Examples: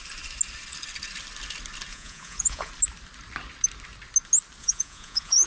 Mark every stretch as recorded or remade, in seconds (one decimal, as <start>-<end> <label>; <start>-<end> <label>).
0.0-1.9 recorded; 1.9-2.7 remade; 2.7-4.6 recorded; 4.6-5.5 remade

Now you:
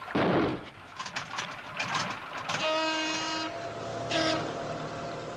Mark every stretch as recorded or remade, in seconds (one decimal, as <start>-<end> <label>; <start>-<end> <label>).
0.0-0.5 recorded; 0.5-1.1 remade; 1.1-3.9 recorded; 3.9-4.4 remade; 4.4-5.4 recorded

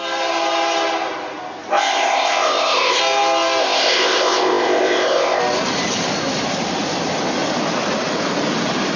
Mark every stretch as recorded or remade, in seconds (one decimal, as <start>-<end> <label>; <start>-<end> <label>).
0.0-1.7 recorded; 1.7-3.0 remade; 3.0-3.6 recorded; 3.6-5.4 remade; 5.4-9.0 recorded